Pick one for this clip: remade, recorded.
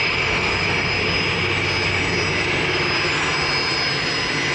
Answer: recorded